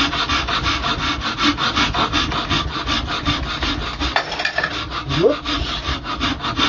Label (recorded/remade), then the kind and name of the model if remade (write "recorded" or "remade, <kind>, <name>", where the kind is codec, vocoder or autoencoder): recorded